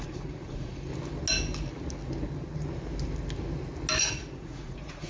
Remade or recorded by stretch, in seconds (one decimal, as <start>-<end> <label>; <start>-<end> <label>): 0.0-0.9 remade; 0.9-4.0 recorded; 4.0-5.1 remade